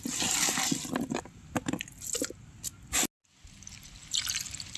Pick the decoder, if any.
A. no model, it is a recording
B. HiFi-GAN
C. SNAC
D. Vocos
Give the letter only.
A